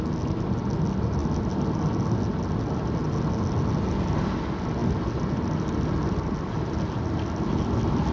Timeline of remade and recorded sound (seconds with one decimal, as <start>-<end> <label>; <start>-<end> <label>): 0.0-8.1 recorded